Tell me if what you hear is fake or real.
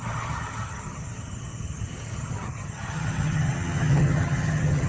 fake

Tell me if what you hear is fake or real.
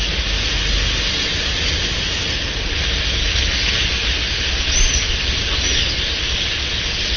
real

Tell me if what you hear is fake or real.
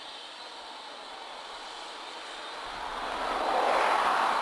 real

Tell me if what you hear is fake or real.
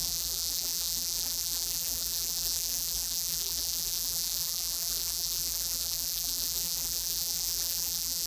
fake